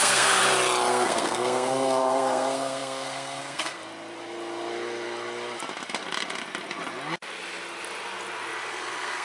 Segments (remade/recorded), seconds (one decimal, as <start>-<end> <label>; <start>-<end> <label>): 0.0-0.4 remade; 0.4-0.9 recorded; 0.9-3.8 remade; 3.8-8.7 recorded; 8.7-9.2 remade